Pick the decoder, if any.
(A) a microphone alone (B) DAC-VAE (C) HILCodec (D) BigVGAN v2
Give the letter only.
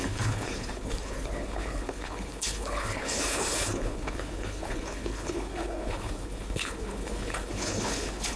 C